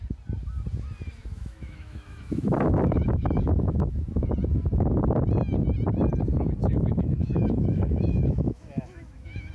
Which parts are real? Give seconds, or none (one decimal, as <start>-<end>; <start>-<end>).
0.0-1.2; 4.3-6.6